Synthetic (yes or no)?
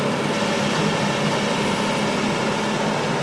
no